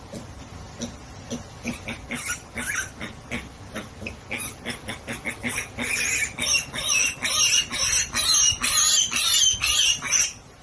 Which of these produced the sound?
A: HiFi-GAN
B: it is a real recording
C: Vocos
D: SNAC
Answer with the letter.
B